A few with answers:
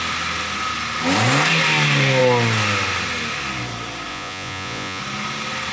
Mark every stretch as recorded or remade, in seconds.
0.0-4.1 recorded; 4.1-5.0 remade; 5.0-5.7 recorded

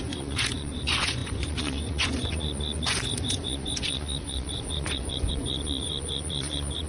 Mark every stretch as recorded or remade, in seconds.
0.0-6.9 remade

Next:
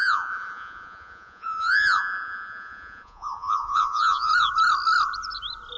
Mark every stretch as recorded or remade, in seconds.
0.0-4.3 remade; 4.3-5.8 recorded

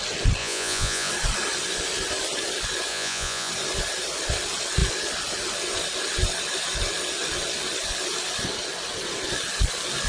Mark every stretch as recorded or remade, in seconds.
0.0-0.4 recorded; 0.4-1.1 remade; 1.1-2.9 recorded; 2.9-3.5 remade; 3.5-10.1 recorded